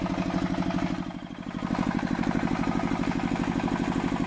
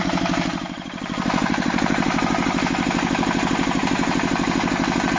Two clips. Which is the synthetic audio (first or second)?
second